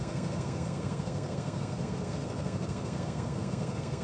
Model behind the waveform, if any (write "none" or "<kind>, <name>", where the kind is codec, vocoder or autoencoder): codec, SNAC